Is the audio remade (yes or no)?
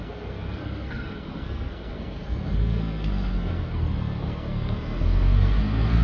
yes